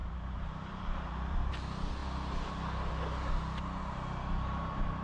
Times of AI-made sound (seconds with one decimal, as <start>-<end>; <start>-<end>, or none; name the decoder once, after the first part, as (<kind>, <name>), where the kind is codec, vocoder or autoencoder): 0.0-1.5 (vocoder, BigVGAN v2)